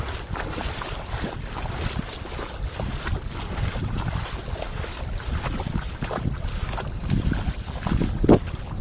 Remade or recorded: recorded